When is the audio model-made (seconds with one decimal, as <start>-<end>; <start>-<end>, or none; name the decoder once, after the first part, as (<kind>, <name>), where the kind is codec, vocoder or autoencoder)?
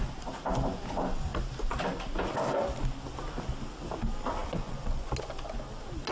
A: 4.4-5.1 (vocoder, Vocos)